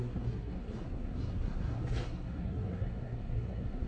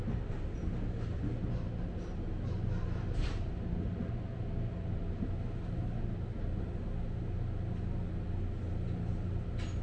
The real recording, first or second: second